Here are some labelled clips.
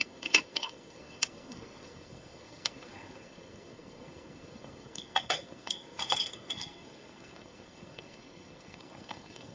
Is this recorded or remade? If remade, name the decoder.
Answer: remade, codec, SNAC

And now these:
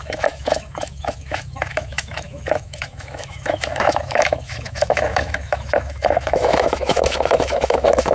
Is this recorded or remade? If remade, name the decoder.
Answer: remade, autoencoder, DAC-VAE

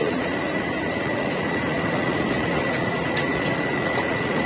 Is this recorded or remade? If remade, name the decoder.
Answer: remade, vocoder, Vocos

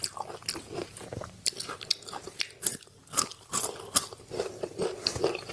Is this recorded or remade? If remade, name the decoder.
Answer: recorded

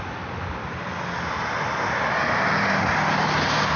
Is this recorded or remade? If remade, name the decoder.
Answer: recorded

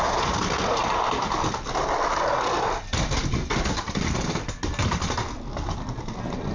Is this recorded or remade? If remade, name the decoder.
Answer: recorded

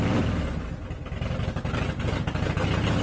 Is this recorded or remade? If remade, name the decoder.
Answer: recorded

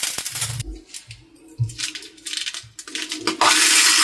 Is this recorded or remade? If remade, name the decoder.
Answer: recorded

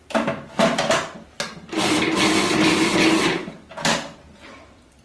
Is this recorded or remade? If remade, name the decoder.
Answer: recorded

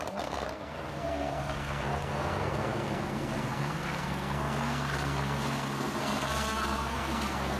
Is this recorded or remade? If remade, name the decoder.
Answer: remade, codec, SNAC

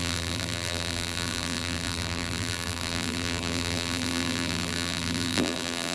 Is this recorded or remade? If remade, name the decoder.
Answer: remade, vocoder, BigVGAN v2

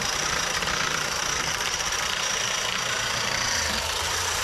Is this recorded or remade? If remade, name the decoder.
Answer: remade, vocoder, BigVGAN v2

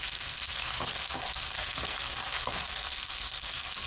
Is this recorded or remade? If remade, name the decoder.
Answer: remade, codec, SNAC